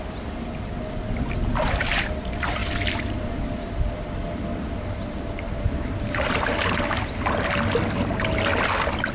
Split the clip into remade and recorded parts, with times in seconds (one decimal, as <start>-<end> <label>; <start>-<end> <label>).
0.0-9.1 recorded